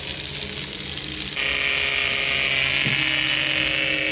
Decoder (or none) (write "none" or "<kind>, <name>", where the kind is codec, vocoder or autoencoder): none